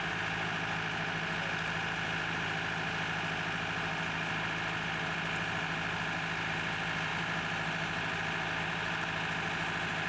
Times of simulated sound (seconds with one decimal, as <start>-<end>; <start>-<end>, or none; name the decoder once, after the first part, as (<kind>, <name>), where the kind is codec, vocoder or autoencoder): none